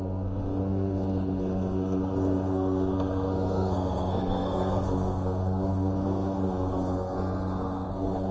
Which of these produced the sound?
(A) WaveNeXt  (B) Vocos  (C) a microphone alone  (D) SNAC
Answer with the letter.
D